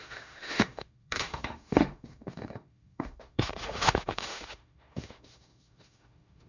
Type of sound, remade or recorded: remade